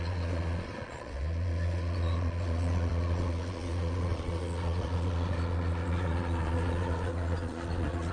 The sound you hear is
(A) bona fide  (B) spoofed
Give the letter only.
B